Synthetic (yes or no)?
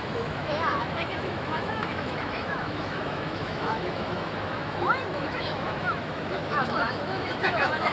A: yes